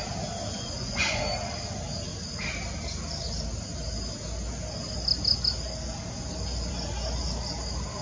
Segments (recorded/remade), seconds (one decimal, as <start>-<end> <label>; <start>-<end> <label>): 0.0-0.5 recorded; 0.5-1.2 remade; 1.2-8.0 recorded